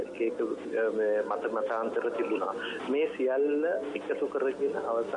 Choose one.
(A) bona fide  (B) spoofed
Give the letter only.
A